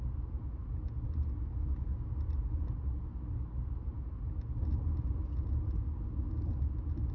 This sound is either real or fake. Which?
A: real